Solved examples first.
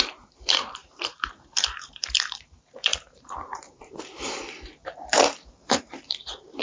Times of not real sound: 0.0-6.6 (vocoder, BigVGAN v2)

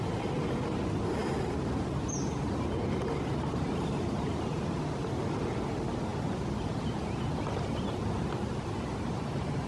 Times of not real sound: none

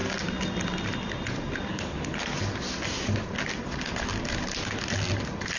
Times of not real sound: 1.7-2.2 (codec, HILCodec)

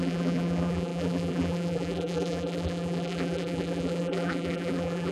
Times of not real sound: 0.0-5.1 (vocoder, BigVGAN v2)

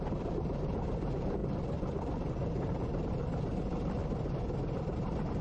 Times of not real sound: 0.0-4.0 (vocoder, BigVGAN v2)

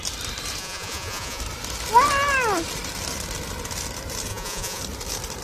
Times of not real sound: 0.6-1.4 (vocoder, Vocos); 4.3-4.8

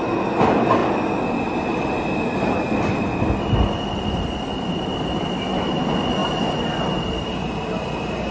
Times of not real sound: none

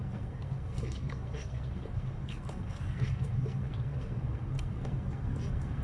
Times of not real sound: 0.0-5.8 (codec, SNAC)